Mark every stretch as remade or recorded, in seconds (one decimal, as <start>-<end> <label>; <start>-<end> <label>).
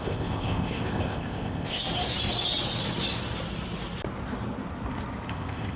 0.0-1.8 remade; 1.8-5.3 recorded; 5.3-5.8 remade